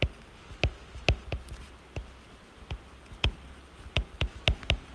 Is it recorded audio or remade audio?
recorded